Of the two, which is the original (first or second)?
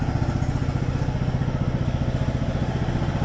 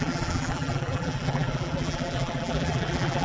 first